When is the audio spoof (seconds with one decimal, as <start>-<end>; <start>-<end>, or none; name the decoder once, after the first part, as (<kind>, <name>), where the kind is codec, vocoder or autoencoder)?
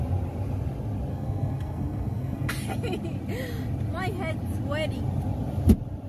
1.1-2.5 (codec, SNAC)